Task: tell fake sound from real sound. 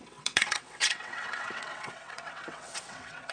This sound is fake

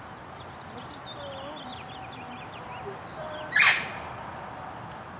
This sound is real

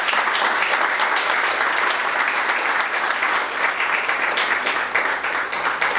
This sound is fake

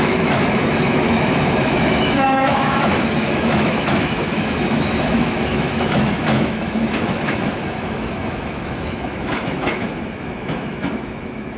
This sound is fake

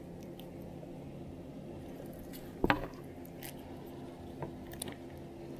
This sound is real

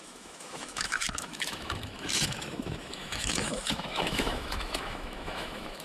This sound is fake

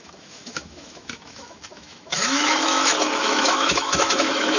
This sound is fake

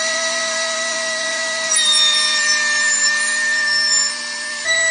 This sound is fake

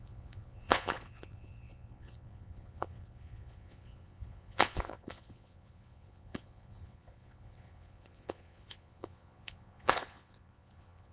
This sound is fake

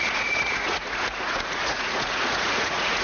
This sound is fake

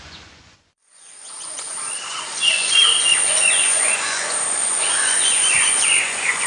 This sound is fake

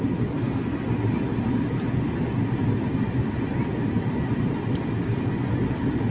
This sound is real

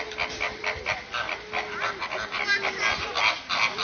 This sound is real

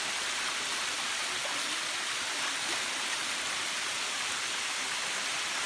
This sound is real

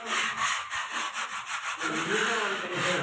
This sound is real